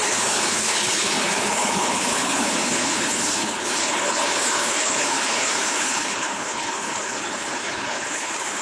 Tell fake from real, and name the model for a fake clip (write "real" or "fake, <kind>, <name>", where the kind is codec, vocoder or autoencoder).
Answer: fake, codec, HILCodec